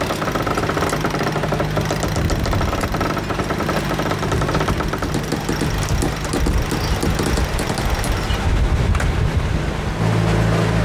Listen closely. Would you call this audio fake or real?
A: real